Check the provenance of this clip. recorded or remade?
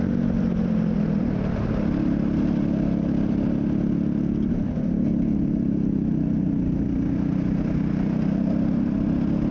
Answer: recorded